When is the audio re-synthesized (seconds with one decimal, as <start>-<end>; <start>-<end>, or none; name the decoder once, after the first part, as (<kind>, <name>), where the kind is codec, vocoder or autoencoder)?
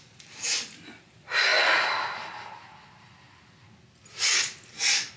none